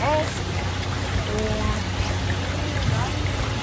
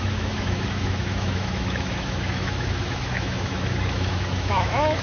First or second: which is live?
first